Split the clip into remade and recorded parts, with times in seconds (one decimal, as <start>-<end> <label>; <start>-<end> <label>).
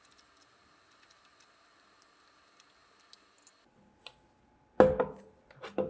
0.0-5.9 recorded